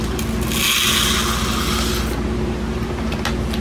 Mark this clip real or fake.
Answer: real